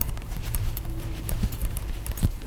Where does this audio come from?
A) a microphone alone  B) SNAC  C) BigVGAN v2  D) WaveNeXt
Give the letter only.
C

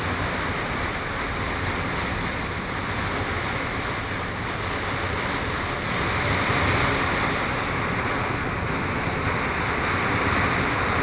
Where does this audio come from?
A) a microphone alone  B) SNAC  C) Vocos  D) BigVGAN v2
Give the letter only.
A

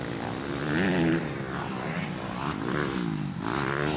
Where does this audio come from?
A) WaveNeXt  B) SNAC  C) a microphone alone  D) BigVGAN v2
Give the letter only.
C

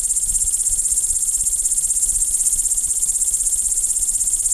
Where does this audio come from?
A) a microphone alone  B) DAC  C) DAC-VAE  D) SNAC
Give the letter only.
A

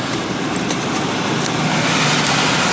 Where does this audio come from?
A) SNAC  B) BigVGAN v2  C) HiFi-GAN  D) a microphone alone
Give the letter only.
D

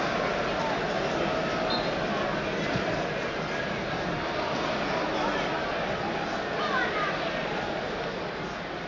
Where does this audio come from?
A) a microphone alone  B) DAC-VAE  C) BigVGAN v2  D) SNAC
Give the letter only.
A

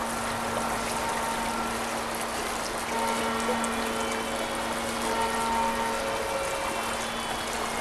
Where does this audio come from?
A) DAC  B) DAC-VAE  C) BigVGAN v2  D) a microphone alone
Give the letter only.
D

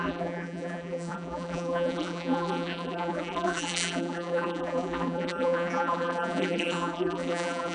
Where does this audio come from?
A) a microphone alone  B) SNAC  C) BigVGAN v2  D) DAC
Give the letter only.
C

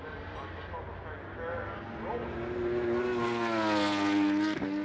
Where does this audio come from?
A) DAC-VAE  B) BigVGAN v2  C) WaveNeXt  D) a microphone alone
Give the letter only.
D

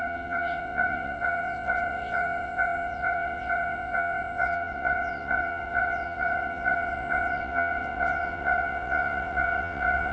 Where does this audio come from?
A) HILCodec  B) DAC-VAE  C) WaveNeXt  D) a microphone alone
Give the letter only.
C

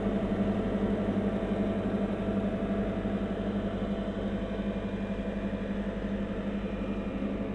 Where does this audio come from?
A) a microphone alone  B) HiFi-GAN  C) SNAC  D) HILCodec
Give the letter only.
A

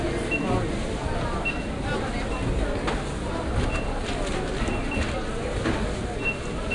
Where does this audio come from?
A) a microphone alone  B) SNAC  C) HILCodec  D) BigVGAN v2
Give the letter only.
A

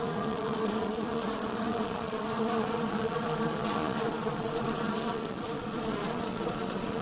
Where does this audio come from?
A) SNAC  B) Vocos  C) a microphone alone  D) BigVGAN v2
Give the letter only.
B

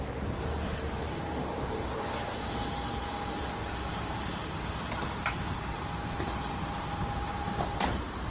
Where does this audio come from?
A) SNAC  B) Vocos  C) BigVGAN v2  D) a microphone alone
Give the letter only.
C